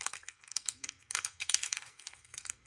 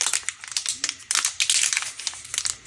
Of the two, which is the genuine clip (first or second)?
second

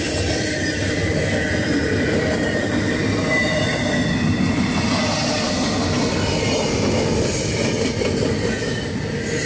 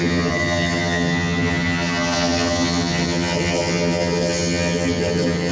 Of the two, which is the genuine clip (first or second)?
first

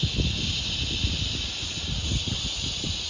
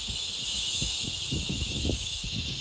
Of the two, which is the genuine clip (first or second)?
first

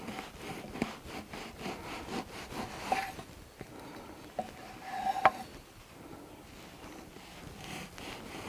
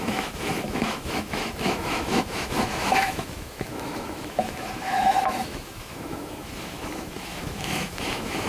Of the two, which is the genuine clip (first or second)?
first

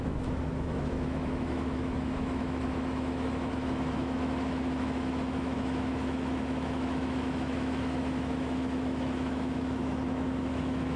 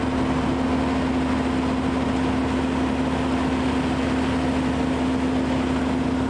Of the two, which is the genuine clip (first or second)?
second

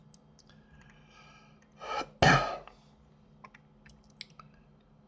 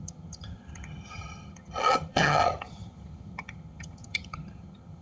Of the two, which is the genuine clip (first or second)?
first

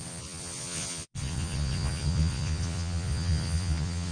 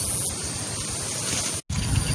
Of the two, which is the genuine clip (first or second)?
second